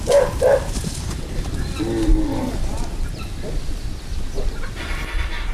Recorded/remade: recorded